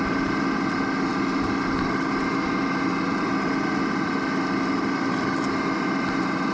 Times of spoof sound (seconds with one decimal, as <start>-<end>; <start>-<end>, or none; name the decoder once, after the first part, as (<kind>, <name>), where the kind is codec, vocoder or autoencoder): none